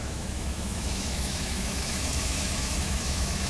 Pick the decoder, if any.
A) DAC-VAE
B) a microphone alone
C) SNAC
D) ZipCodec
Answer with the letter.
A